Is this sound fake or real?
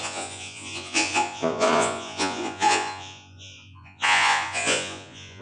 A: fake